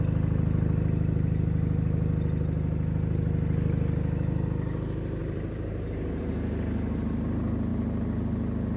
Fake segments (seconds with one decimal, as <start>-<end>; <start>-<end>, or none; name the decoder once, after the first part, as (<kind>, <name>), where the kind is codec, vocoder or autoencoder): 5.2-6.3 (vocoder, BigVGAN v2)